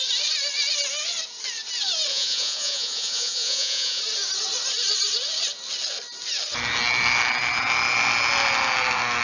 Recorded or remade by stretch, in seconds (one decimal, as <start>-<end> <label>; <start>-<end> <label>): 0.0-2.1 recorded; 2.1-4.0 remade; 4.0-9.2 recorded